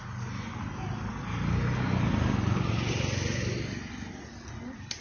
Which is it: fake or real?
real